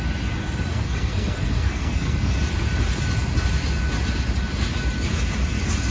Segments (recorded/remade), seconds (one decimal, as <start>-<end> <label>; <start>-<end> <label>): 0.0-0.7 recorded; 0.7-2.3 remade; 2.3-5.9 recorded